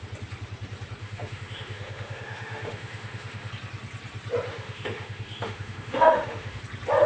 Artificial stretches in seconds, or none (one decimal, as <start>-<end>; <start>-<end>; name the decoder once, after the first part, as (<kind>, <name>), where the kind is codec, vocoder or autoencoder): 1.0-3.5 (autoencoder, DAC-VAE); 4.5-6.6